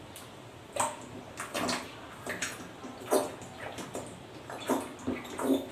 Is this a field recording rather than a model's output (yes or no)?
yes